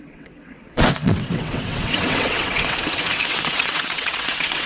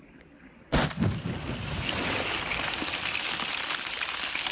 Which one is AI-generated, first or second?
first